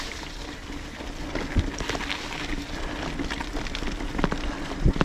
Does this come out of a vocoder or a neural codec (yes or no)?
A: no